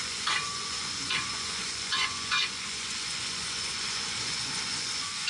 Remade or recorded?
remade